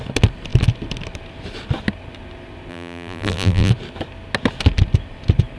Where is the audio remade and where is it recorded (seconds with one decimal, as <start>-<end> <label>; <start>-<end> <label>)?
0.0-2.7 recorded; 2.7-3.7 remade; 3.7-5.6 recorded